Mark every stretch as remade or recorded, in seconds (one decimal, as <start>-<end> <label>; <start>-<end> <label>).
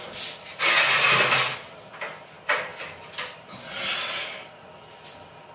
0.0-5.5 recorded